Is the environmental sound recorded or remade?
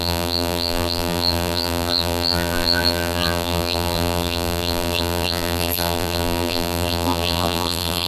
remade